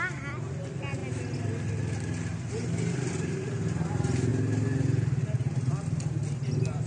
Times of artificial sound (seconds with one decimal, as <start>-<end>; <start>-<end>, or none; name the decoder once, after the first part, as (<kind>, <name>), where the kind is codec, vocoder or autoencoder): none